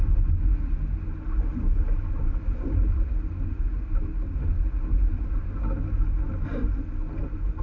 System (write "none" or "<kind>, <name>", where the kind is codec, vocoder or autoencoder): none